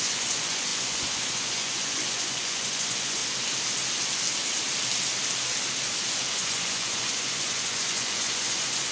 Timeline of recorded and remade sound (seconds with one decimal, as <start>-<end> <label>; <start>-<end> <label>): 0.0-3.2 remade; 3.2-6.3 recorded; 6.3-8.9 remade